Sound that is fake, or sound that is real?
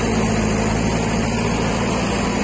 real